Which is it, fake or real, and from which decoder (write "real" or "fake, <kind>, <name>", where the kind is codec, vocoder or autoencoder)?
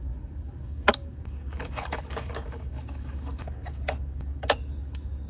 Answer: fake, codec, DAC